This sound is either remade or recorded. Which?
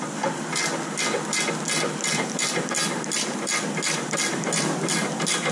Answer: recorded